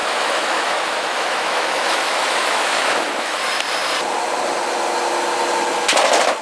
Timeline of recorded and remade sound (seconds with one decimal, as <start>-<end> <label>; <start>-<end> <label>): 0.0-3.4 remade; 3.4-6.4 recorded